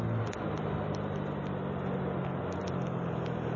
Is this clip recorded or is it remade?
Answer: recorded